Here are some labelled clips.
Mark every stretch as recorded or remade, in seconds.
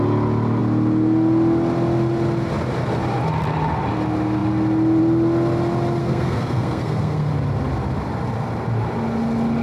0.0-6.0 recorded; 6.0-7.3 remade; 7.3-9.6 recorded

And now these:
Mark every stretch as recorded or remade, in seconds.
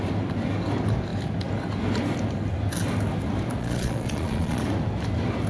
0.0-3.6 recorded; 3.6-4.6 remade; 4.6-5.5 recorded